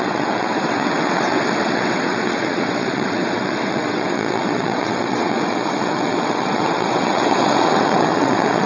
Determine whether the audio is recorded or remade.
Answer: remade